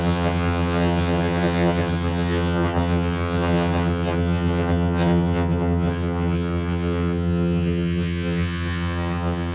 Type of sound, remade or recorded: remade